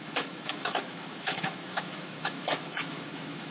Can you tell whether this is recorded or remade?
remade